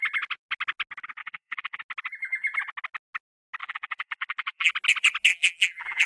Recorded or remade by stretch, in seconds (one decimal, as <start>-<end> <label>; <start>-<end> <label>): 0.0-1.2 recorded; 1.2-1.8 remade; 1.8-3.6 recorded; 3.6-4.7 remade; 4.7-5.3 recorded; 5.3-6.1 remade